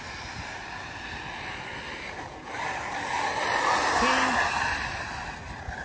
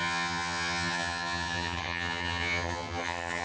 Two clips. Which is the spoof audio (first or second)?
second